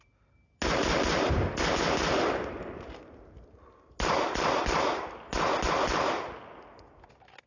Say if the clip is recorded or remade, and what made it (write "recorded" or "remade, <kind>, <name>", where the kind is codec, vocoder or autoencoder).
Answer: recorded